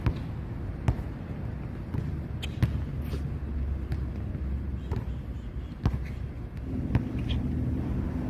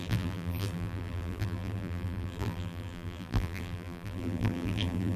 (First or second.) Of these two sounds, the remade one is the second